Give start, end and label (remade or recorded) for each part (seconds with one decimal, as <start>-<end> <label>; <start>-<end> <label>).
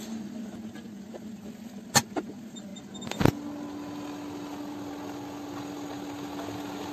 0.0-6.9 recorded